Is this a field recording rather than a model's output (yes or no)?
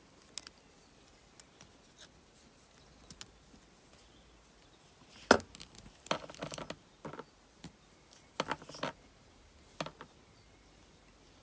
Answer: yes